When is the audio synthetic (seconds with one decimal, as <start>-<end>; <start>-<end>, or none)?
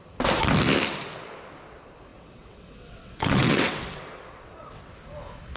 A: 2.1-4.9